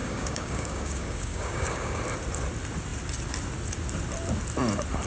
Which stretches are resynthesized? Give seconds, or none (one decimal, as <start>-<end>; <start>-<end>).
0.0-2.0